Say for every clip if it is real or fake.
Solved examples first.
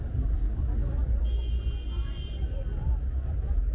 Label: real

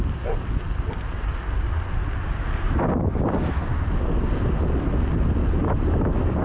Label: real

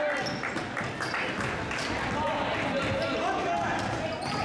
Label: real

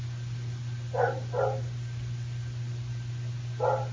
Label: real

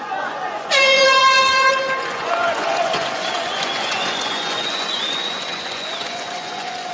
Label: fake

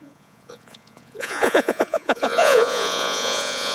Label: fake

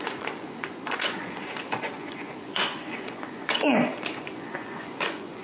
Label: fake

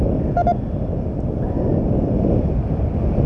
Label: real